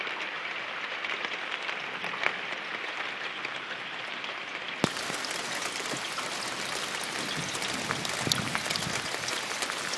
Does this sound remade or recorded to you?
recorded